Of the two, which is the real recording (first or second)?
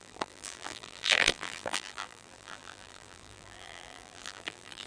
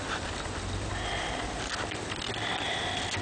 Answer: second